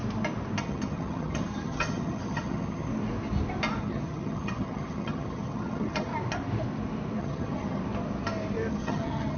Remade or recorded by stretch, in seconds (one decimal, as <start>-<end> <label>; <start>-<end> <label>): 0.0-0.6 recorded; 0.6-2.9 remade; 2.9-3.8 recorded; 3.8-6.1 remade; 6.1-7.2 recorded; 7.2-7.8 remade; 7.8-8.7 recorded; 8.7-9.4 remade